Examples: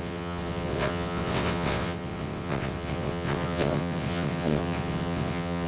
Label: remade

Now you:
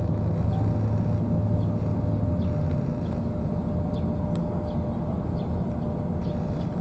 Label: recorded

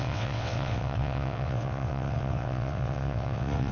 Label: remade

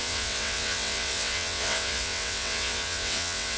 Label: remade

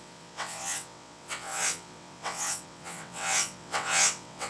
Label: remade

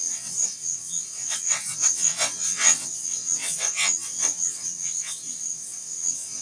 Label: remade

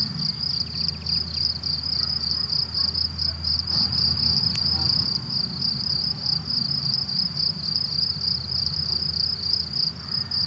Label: recorded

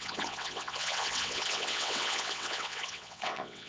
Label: remade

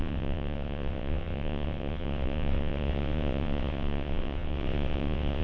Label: remade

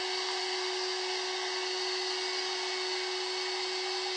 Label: recorded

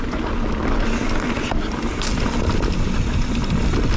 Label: recorded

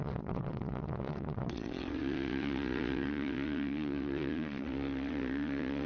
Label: remade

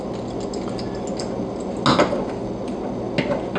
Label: recorded